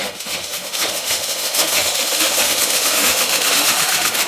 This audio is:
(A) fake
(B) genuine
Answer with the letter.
A